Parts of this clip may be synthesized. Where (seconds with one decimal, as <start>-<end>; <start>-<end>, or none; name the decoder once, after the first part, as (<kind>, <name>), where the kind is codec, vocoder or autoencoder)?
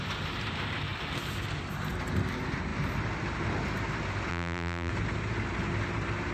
4.3-4.9 (vocoder, BigVGAN v2)